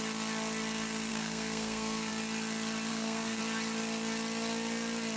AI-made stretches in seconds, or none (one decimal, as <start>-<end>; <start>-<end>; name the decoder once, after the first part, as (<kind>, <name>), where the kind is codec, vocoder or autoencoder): 1.1-2.1 (codec, SNAC); 2.9-3.4